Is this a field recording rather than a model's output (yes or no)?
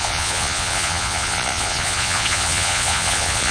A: no